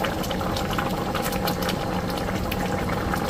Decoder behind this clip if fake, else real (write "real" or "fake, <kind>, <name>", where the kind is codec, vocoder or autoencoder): real